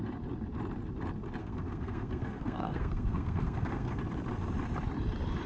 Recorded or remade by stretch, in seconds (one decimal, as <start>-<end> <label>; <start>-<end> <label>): 0.0-1.4 recorded; 1.4-4.0 remade; 4.0-5.5 recorded